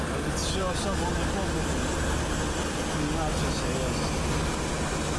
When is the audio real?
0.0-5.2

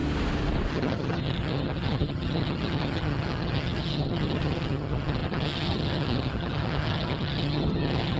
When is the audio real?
0.0-0.7

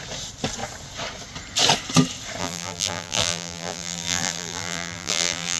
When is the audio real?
0.0-2.4

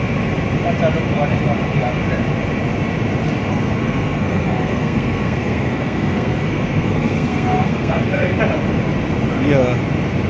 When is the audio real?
0.0-3.5; 8.4-10.3

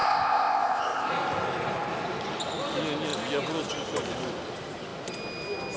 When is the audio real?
1.1-5.8

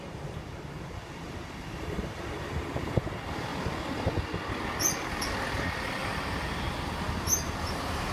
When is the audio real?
3.5-7.2

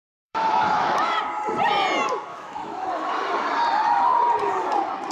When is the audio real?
1.2-2.3; 3.1-5.1